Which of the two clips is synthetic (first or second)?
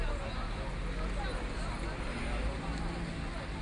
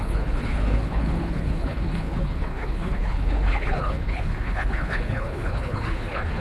second